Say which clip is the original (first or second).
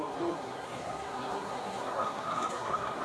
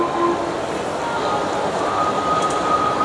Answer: second